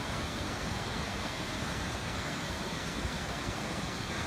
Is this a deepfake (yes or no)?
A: yes